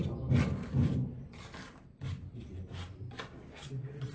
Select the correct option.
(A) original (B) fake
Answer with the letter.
A